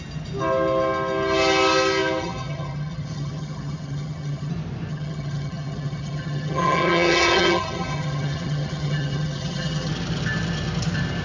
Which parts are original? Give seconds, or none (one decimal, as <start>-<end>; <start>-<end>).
0.0-2.2; 4.5-4.9; 9.9-11.2